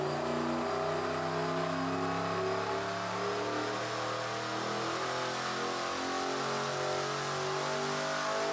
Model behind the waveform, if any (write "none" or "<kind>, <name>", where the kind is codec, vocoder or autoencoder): none